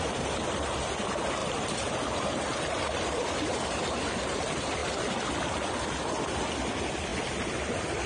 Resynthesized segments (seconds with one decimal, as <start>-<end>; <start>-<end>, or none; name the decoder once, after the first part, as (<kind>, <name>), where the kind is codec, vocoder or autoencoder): 1.4-3.3 (vocoder, BigVGAN v2)